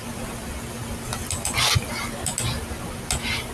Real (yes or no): yes